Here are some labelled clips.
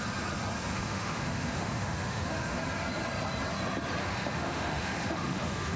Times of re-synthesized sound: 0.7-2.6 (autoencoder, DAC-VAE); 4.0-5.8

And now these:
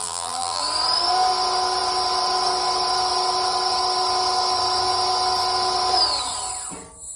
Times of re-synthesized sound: 0.0-0.6 (vocoder, BigVGAN v2)

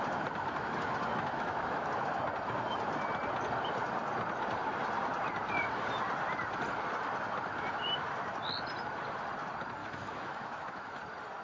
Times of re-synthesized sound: 1.1-1.9 (autoencoder, DAC-VAE); 9.8-11.0